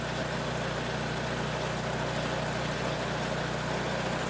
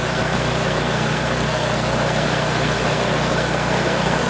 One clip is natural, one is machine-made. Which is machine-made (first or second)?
second